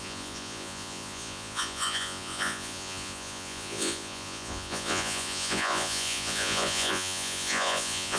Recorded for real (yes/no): no